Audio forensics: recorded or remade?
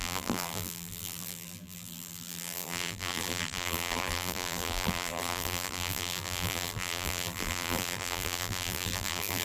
remade